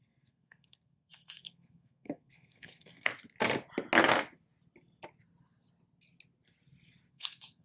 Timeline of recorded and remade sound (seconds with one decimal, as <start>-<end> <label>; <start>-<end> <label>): 0.0-3.1 remade; 3.1-7.1 recorded; 7.1-7.6 remade